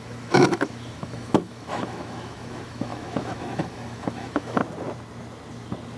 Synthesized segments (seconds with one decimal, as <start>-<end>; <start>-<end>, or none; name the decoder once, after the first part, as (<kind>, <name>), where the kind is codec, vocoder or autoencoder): 0.0-4.6 (autoencoder, DAC-VAE)